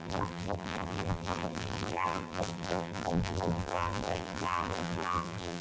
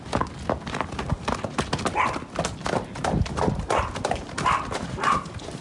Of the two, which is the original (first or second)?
second